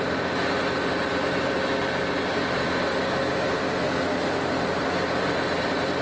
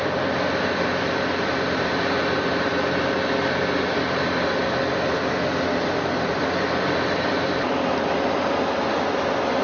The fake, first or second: second